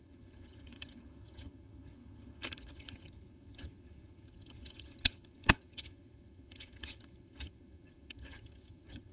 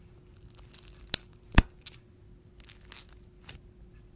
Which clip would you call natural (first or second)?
second